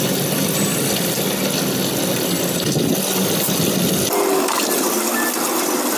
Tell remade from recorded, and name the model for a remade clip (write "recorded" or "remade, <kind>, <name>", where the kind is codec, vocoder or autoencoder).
recorded